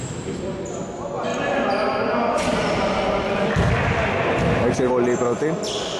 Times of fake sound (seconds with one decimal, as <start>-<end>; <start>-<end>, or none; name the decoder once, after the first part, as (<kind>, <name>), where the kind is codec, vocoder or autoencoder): none

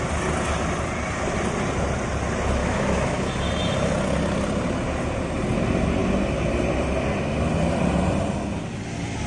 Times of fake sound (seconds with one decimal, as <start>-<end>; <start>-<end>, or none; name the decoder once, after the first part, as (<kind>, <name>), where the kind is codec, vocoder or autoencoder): 2.6-3.2 (autoencoder, DAC-VAE)

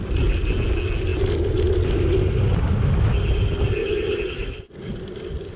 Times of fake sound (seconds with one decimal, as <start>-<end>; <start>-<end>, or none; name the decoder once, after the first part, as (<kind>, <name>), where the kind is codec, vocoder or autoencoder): 3.8-4.7 (autoencoder, DAC-VAE)

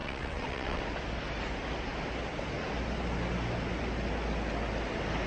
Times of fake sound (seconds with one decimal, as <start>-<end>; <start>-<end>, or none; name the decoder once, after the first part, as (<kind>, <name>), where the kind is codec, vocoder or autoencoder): 0.0-0.8 (vocoder, WaveNeXt)